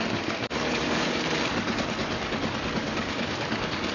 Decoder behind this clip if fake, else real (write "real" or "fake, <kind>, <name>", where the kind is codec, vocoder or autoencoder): fake, codec, DAC